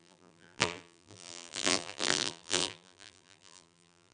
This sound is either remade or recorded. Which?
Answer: remade